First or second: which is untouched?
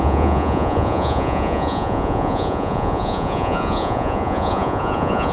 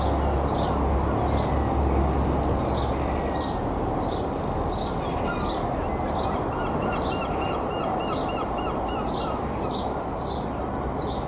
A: second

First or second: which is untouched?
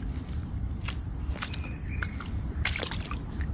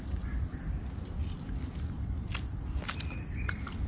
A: second